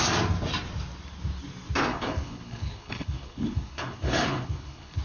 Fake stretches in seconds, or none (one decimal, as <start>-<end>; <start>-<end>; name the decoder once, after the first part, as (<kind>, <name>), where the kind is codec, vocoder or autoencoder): 1.9-5.0 (codec, HILCodec)